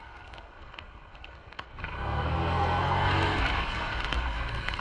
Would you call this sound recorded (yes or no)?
no